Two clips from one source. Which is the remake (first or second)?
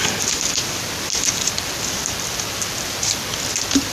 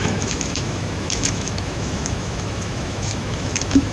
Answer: second